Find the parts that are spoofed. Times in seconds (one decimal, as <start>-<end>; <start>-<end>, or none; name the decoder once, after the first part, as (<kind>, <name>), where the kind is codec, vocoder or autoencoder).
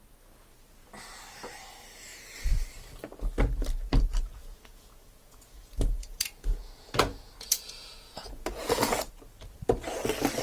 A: 4.4-9.1 (vocoder, Vocos)